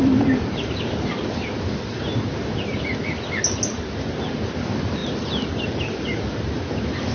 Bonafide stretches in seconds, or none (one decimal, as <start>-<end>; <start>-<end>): 0.0-7.1